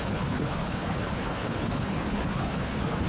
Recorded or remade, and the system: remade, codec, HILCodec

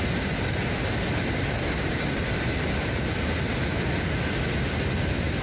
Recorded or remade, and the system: recorded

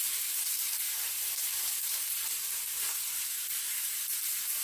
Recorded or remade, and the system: remade, vocoder, BigVGAN v2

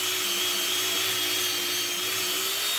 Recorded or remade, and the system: remade, vocoder, BigVGAN v2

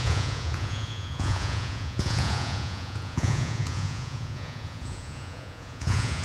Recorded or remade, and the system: remade, vocoder, Vocos